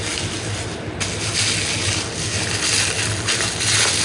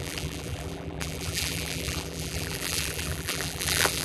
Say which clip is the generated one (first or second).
second